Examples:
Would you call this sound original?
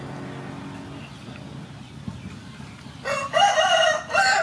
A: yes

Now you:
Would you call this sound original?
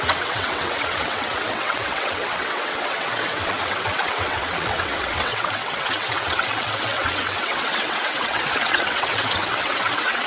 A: no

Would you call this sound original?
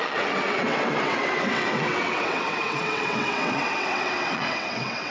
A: no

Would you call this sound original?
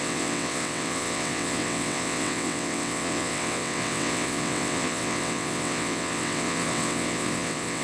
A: no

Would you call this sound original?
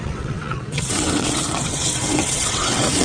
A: no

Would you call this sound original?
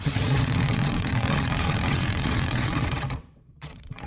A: no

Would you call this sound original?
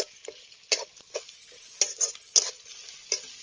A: yes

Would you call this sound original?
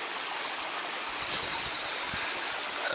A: yes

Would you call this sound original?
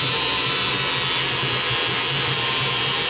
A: yes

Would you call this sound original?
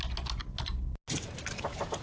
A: yes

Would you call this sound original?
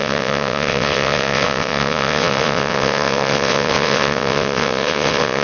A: no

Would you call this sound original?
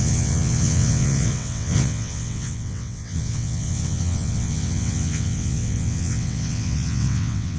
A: no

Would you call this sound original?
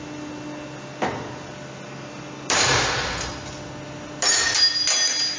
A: yes